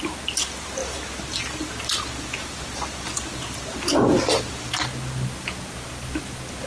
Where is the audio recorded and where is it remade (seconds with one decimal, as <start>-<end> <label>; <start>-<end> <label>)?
0.0-6.7 recorded